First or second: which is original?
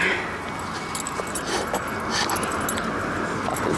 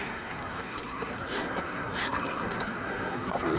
first